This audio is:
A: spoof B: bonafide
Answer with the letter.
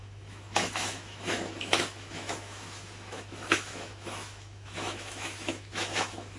A